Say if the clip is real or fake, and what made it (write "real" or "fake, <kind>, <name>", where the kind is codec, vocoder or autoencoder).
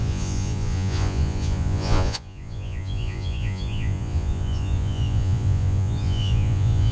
fake, vocoder, Vocos